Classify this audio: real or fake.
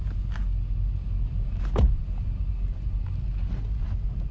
real